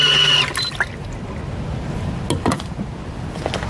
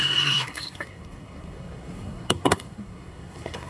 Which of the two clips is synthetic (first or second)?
second